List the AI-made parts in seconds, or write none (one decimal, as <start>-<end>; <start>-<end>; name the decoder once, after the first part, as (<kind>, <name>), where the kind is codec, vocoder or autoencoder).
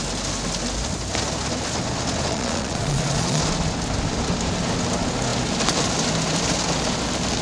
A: 2.3-3.4 (vocoder, Vocos)